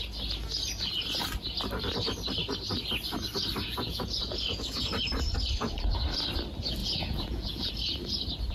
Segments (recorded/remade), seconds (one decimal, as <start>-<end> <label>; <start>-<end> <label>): 0.0-3.6 recorded; 3.6-4.9 remade; 4.9-6.8 recorded; 6.8-7.7 remade; 7.7-8.5 recorded